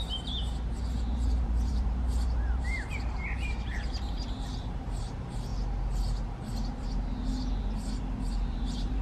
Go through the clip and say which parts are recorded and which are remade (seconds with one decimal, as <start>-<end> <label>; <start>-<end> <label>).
0.0-5.5 remade; 5.5-8.3 recorded; 8.3-9.0 remade